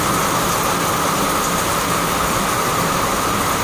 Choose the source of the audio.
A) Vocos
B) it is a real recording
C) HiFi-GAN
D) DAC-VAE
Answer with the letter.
B